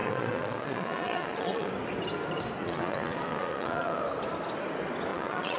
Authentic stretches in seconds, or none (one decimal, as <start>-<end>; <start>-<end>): 1.7-2.6; 4.0-5.1